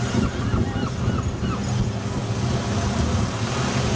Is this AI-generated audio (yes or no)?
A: no